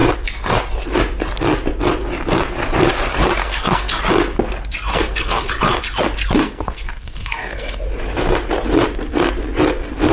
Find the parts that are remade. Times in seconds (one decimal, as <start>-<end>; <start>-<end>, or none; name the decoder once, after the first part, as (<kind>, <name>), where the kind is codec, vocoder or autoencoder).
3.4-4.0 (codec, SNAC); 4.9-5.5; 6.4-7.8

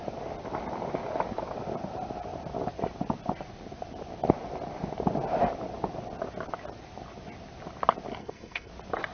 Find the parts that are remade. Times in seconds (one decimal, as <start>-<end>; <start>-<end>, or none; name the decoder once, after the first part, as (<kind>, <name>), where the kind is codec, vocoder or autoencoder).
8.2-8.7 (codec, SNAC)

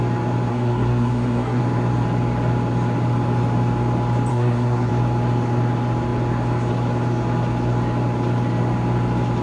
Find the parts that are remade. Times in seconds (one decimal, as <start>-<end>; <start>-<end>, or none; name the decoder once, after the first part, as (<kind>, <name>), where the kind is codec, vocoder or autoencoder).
0.5-1.6 (codec, SNAC); 4.3-4.9

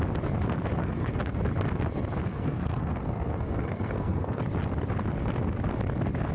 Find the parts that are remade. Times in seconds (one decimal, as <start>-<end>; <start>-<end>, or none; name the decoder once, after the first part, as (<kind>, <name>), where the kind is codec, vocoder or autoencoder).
0.8-1.4 (codec, SNAC); 2.3-4.4

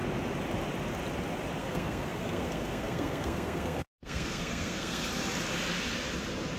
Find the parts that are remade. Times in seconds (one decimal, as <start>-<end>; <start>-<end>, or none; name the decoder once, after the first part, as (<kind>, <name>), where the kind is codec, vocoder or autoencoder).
1.6-5.0 (codec, SNAC)